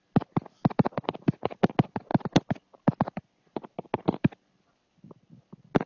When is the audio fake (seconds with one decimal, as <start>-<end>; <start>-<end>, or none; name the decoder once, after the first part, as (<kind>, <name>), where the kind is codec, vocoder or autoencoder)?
none